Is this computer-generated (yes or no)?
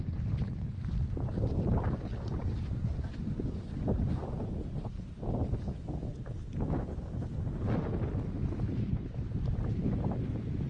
no